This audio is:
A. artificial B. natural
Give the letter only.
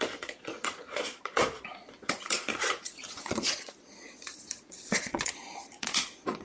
A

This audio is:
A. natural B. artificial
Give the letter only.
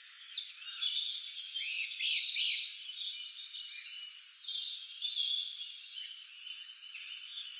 A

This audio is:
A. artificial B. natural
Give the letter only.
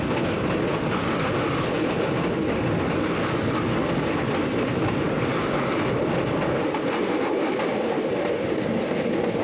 B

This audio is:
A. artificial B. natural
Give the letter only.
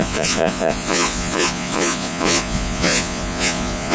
A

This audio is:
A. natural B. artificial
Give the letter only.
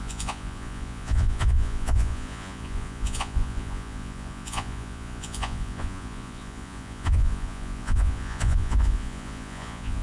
B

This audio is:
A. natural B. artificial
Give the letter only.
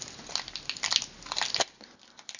A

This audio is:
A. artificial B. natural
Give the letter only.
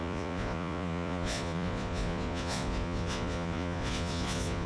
A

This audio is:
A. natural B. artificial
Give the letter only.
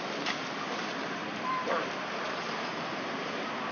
A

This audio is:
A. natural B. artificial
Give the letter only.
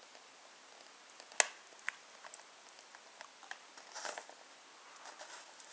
A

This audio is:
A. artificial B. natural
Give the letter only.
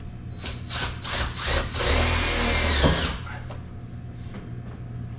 B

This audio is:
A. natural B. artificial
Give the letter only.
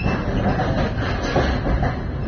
A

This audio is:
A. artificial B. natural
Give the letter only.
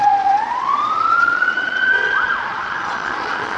A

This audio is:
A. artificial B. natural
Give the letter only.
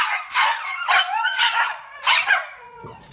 A